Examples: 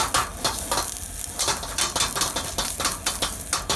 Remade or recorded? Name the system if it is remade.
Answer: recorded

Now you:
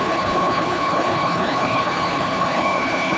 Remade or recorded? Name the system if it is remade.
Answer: remade, codec, HILCodec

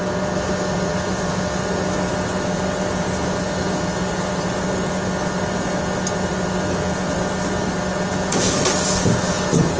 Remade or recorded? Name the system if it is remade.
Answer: recorded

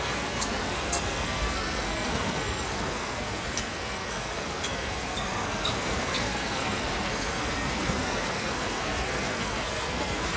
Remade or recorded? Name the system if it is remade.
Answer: remade, codec, SNAC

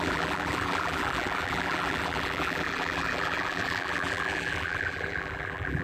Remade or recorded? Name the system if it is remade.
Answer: remade, vocoder, BigVGAN v2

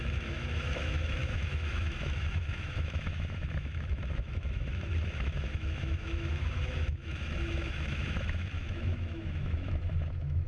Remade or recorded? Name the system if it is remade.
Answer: remade, autoencoder, DAC-VAE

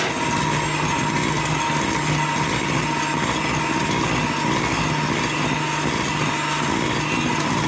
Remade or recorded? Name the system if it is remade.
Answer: recorded